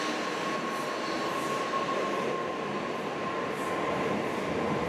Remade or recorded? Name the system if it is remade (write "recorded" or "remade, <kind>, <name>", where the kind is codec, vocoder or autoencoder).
recorded